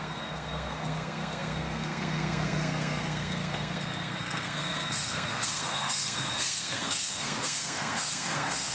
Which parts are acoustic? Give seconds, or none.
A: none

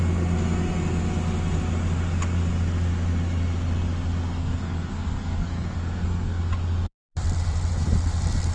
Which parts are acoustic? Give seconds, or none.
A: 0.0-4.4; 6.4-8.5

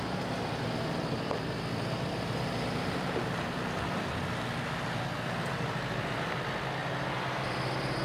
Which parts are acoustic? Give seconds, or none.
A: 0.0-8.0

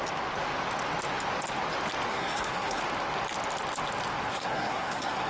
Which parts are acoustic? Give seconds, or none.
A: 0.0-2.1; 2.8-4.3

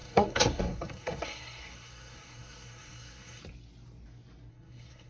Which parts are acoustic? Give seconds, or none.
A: 3.4-4.5

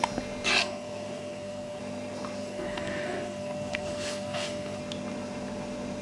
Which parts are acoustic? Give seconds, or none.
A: 0.0-0.6; 1.8-2.4; 4.8-6.0

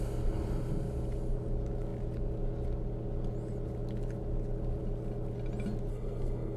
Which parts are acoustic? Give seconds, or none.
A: 0.0-5.9